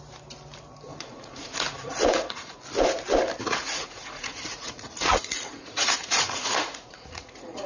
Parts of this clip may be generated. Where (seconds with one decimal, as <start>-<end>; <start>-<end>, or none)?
0.9-2.6; 3.4-7.7